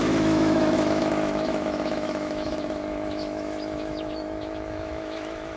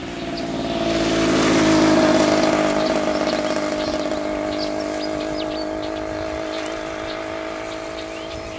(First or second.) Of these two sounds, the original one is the second